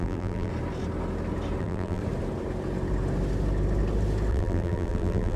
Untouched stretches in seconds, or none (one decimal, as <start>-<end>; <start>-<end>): 0.5-1.6; 2.0-4.3